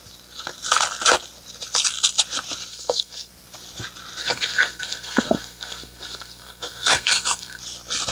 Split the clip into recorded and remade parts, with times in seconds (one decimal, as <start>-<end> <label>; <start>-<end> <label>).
0.0-2.7 recorded; 2.7-3.3 remade; 3.3-4.2 recorded; 4.2-7.6 remade; 7.6-8.1 recorded